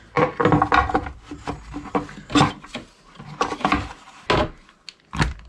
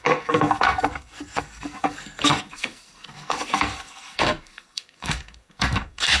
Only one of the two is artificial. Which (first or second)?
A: second